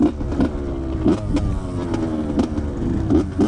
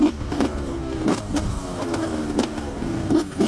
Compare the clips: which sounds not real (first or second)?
second